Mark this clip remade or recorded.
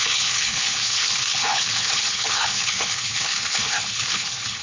remade